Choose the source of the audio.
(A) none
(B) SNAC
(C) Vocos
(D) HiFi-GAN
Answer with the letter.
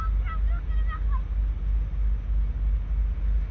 A